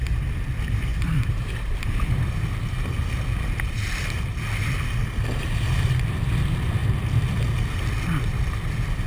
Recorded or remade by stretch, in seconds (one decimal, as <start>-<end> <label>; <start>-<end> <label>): 0.0-0.9 recorded; 0.9-3.0 remade; 3.0-9.1 recorded